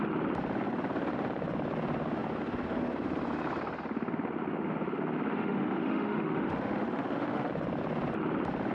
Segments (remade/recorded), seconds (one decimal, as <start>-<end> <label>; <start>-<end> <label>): 0.0-5.3 recorded; 5.3-7.5 remade; 7.5-8.7 recorded